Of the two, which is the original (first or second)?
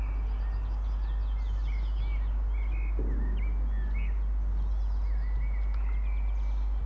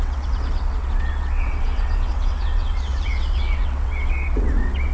first